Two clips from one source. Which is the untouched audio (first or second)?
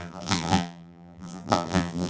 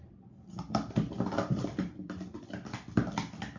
second